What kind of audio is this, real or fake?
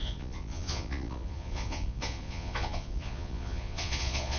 fake